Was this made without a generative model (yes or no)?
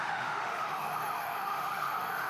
no